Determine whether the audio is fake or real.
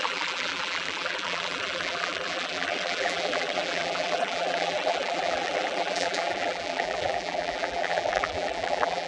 fake